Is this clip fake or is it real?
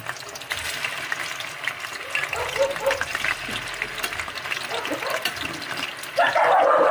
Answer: real